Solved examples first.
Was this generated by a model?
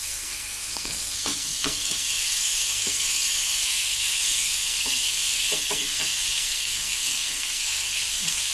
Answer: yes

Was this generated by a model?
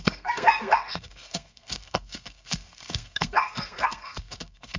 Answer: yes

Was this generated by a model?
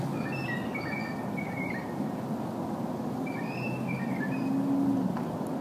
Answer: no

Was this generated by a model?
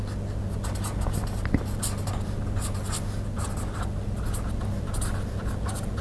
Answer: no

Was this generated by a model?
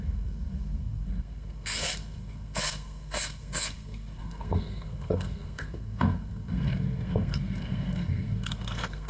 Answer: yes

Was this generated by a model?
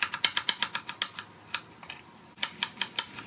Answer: no